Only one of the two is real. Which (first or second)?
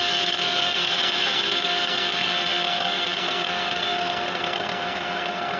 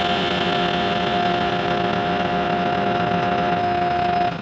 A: second